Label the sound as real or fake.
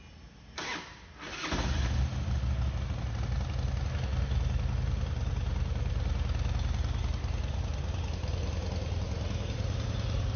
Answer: real